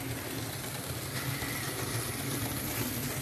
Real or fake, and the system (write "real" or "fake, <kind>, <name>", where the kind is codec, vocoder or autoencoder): real